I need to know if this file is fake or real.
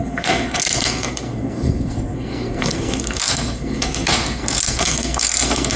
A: fake